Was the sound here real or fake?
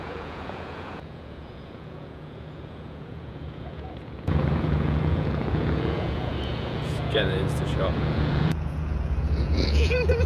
fake